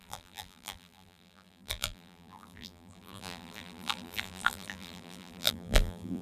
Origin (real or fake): fake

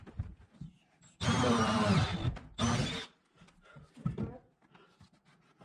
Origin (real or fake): real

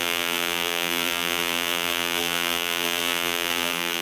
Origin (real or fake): fake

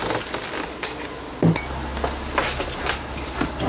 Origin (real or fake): real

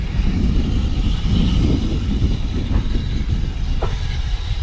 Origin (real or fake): real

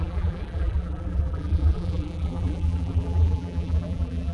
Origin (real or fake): fake